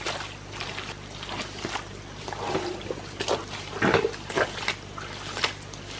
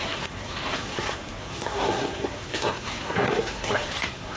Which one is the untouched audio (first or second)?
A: first